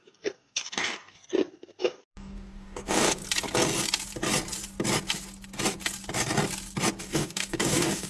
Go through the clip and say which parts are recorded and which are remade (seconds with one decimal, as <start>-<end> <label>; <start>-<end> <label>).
0.0-1.2 remade; 1.2-1.8 recorded; 1.8-3.2 remade; 3.2-7.0 recorded; 7.0-8.1 remade